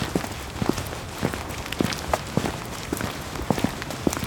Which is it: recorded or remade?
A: recorded